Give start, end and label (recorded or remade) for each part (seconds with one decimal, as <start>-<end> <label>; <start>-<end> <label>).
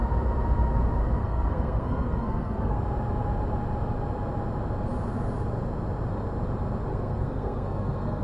0.0-1.2 recorded; 1.2-2.8 remade; 2.8-6.9 recorded; 6.9-8.2 remade